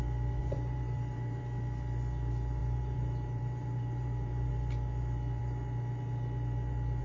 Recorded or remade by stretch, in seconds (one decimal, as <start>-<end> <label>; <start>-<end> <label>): 0.0-0.4 recorded; 0.4-1.4 remade; 1.4-2.6 recorded; 2.6-4.5 remade; 4.5-7.0 recorded